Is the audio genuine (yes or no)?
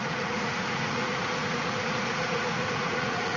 no